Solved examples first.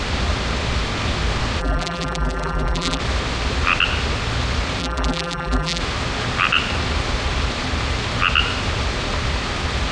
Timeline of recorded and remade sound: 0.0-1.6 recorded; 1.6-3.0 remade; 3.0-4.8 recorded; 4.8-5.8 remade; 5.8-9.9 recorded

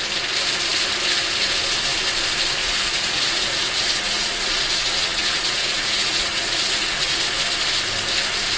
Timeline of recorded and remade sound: 0.0-2.6 recorded; 2.6-7.2 remade; 7.2-8.6 recorded

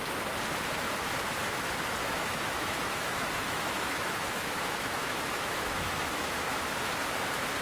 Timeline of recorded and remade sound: 0.0-2.0 recorded; 2.0-6.6 remade; 6.6-7.6 recorded